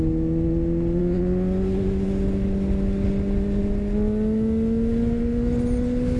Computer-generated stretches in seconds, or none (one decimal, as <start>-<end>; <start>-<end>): none